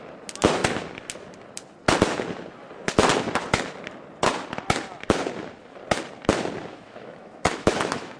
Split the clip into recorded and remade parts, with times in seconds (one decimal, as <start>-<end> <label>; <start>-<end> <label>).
0.0-6.7 recorded; 6.7-8.2 remade